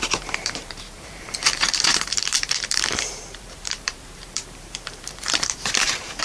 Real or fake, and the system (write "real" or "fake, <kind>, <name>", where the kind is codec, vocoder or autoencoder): fake, vocoder, BigVGAN v2